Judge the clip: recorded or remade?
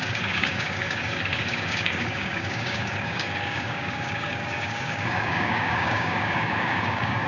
remade